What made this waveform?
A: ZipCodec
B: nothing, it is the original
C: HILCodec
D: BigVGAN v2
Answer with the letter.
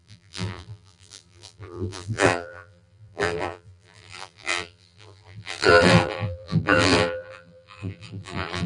D